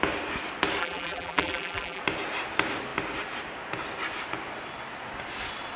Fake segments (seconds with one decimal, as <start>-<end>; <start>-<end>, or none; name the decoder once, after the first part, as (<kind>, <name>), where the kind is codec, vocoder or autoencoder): 0.8-2.0 (vocoder, BigVGAN v2)